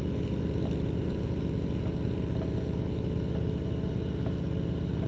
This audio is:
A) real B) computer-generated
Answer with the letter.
A